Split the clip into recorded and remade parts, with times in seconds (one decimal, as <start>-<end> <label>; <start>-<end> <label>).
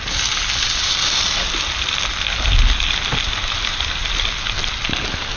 0.0-5.4 recorded